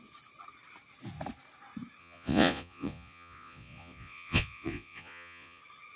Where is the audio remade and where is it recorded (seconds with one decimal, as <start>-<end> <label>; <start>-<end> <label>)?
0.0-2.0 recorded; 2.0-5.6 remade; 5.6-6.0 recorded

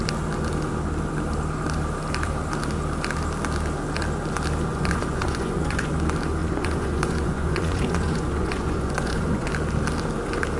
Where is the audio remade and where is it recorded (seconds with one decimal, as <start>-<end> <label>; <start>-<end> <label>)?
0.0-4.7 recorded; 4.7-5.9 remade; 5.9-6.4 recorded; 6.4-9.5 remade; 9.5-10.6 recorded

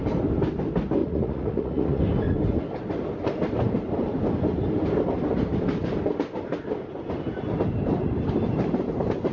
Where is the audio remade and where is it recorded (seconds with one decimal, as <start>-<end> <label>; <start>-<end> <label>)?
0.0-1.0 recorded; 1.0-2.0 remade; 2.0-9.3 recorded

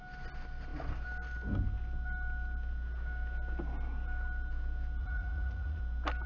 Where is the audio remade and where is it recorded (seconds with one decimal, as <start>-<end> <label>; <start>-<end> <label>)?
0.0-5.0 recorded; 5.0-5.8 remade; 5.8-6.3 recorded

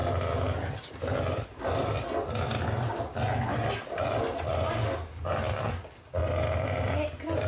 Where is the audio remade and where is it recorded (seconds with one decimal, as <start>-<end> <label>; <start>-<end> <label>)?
0.0-7.5 recorded

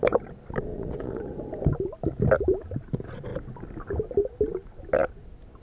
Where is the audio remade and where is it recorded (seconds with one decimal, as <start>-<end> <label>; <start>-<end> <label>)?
0.0-0.7 recorded; 0.7-1.3 remade; 1.3-5.6 recorded

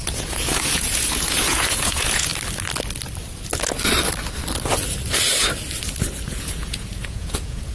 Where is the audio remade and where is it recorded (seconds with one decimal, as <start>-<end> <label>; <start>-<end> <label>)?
0.0-2.3 remade; 2.3-6.3 recorded; 6.3-7.7 remade